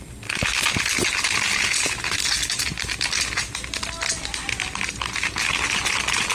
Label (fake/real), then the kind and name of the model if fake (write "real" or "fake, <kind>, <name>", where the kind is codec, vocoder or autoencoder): real